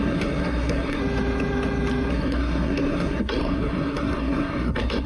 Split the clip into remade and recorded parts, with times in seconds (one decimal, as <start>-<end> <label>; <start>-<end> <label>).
0.0-1.0 remade; 1.0-2.1 recorded; 2.1-5.1 remade